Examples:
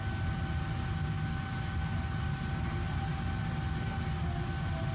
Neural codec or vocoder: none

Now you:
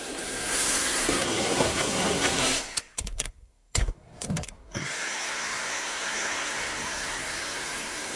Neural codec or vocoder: codec, SNAC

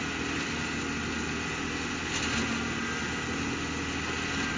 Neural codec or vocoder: none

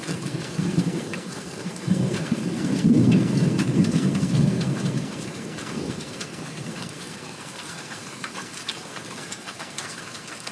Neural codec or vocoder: codec, SNAC